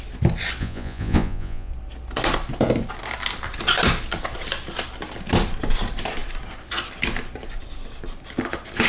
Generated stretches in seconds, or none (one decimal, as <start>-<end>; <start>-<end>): 0.6-1.7